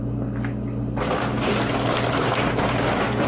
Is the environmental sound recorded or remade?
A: recorded